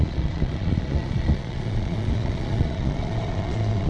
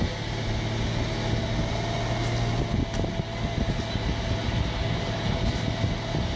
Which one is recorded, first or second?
second